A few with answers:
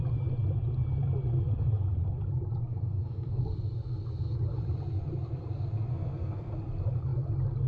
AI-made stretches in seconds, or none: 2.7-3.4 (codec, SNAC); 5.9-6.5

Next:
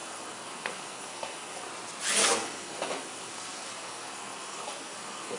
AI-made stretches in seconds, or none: 0.0-1.7 (codec, SNAC); 2.2-5.4